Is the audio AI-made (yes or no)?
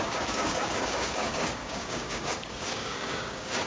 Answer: yes